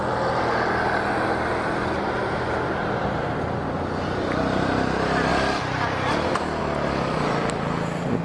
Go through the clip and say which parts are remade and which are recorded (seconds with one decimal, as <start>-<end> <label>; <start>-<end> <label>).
0.0-8.2 recorded